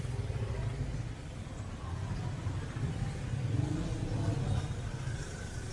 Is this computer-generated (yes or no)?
no